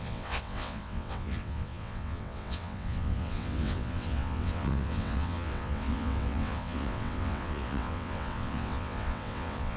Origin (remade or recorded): remade